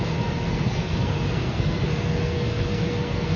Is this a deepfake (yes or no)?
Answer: yes